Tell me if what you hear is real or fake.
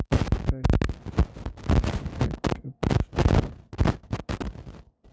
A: real